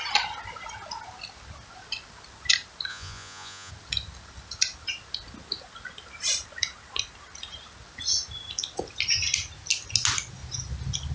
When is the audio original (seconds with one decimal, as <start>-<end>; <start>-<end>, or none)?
0.0-2.9; 3.7-11.1